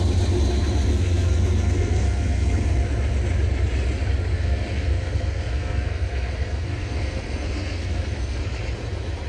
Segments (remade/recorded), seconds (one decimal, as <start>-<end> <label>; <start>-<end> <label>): 0.0-0.9 recorded; 0.9-2.8 remade; 2.8-4.3 recorded; 4.3-8.4 remade; 8.4-9.3 recorded